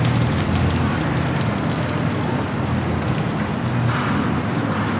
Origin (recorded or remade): recorded